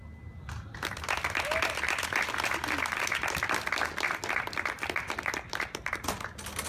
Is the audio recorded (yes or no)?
yes